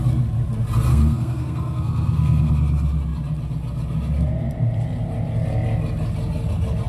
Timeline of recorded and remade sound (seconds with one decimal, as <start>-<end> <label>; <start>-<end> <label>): 0.0-0.9 recorded; 0.9-2.5 remade; 2.5-6.9 recorded